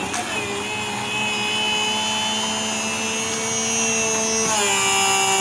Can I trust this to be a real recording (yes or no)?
yes